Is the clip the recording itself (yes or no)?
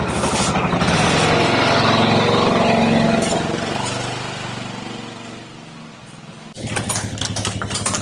yes